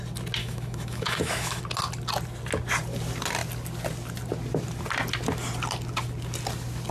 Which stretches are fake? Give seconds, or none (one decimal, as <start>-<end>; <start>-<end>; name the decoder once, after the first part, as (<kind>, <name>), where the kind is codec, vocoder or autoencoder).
0.4-1.6 (autoencoder, DAC-VAE)